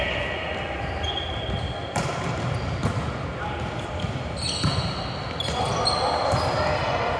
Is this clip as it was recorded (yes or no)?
yes